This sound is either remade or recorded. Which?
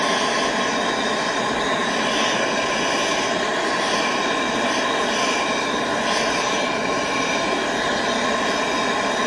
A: recorded